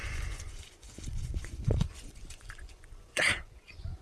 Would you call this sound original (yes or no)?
no